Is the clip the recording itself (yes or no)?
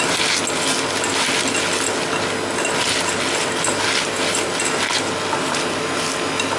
yes